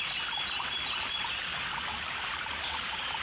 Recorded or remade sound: recorded